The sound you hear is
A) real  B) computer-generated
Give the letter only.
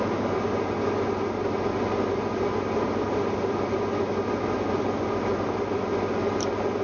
A